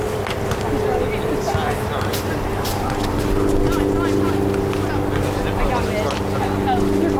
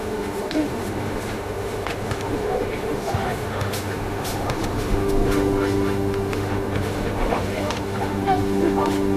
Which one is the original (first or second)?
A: first